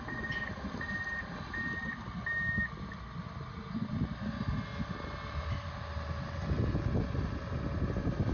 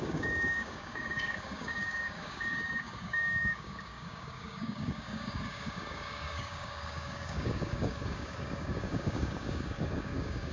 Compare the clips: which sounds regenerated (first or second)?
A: second